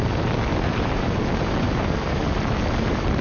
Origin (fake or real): fake